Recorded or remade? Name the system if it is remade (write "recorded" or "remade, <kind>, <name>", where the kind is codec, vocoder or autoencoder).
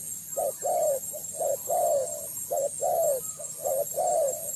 recorded